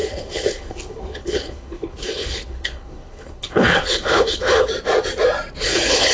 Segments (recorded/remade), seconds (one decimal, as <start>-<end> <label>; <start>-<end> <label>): 0.0-4.7 remade; 4.7-5.6 recorded; 5.6-6.1 remade